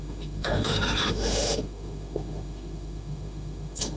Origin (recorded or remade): remade